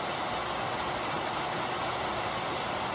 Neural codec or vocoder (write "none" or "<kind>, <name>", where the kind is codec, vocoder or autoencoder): none